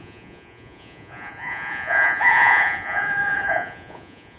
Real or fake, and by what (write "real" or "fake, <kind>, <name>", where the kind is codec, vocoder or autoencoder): fake, vocoder, Vocos